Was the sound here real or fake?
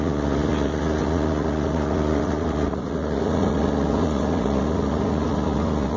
fake